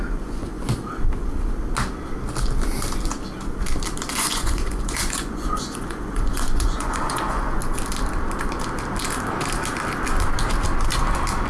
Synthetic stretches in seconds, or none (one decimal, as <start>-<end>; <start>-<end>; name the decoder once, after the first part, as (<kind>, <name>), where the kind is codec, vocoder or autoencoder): 0.0-0.6 (vocoder, Vocos); 4.1-7.6